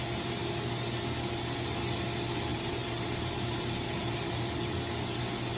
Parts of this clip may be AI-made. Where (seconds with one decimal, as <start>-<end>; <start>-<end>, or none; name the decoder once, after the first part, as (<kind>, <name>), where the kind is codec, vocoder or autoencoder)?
2.5-4.7 (vocoder, BigVGAN v2)